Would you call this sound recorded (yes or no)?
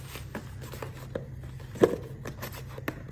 yes